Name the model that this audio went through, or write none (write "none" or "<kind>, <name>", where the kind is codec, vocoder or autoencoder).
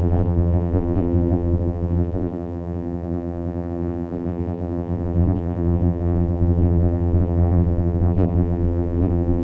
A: vocoder, BigVGAN v2